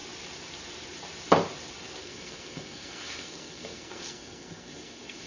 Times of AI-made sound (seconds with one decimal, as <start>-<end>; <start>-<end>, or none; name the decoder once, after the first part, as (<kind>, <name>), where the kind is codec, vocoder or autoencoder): 2.0-5.3 (codec, SNAC)